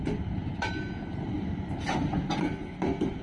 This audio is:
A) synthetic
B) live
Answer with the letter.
B